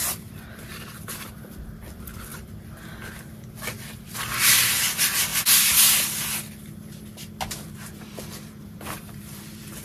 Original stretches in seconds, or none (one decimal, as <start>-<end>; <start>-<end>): 2.3-4.8; 5.3-7.9